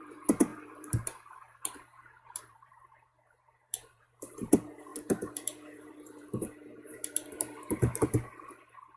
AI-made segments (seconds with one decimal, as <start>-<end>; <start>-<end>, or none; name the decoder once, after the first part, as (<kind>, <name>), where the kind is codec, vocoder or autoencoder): 0.0-9.0 (vocoder, BigVGAN v2)